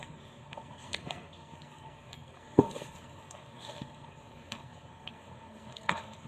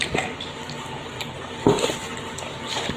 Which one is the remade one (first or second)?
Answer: first